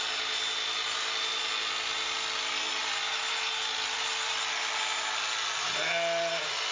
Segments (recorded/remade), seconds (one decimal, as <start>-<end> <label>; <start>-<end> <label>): 0.0-6.7 recorded